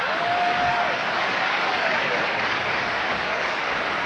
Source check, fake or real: fake